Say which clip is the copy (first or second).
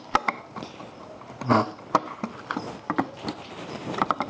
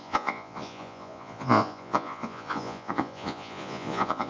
second